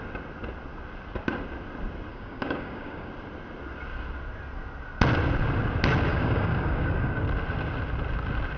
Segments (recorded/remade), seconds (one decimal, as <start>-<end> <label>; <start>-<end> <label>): 0.0-2.1 recorded; 2.1-3.1 remade; 3.1-6.1 recorded; 6.1-7.2 remade; 7.2-8.6 recorded